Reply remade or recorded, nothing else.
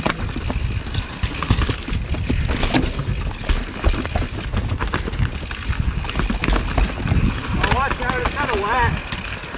recorded